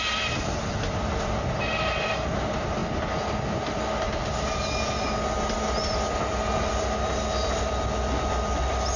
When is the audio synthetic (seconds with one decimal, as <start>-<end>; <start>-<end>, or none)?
0.0-2.8; 7.5-9.0